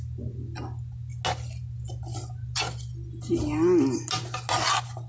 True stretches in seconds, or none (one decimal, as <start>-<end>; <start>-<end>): 0.0-5.1